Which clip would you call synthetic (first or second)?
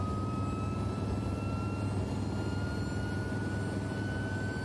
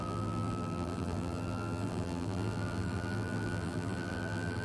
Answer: second